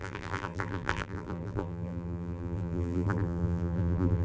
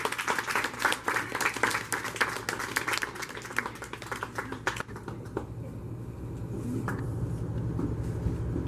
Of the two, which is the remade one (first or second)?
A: first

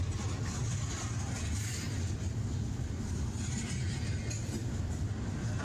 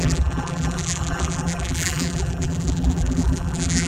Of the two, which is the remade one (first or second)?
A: second